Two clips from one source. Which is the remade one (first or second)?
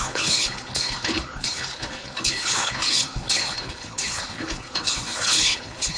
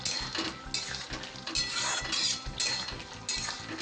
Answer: first